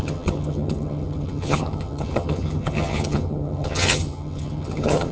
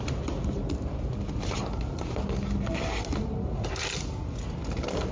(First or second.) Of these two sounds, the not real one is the first